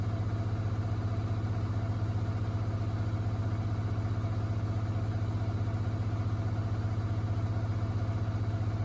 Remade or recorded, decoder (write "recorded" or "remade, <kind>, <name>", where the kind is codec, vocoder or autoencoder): recorded